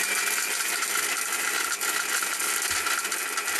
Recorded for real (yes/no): yes